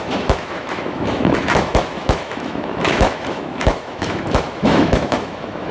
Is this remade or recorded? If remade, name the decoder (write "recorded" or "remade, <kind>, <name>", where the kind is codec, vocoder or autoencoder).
remade, autoencoder, DAC-VAE